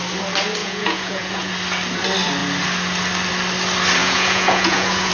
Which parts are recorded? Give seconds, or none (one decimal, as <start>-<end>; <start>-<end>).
0.0-0.6; 1.5-4.0